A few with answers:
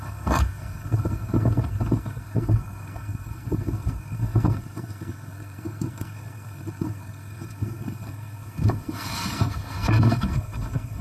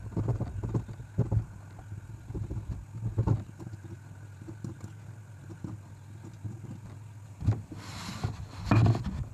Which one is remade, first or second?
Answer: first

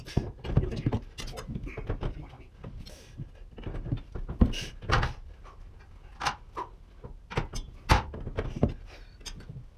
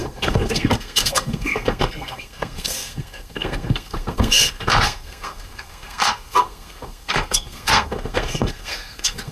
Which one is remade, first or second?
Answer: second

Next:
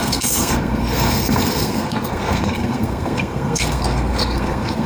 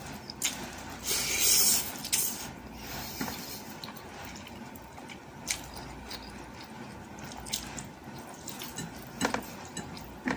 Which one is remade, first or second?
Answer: first